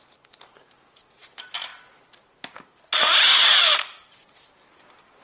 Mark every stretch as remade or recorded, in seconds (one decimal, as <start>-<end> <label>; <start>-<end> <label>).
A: 0.0-5.2 recorded